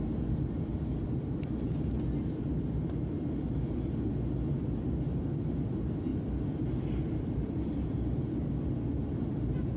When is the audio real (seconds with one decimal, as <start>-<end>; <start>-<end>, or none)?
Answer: 0.0-0.7; 4.0-6.1; 8.5-9.8